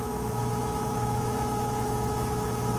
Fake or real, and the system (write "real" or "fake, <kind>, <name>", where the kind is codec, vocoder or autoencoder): fake, autoencoder, DAC-VAE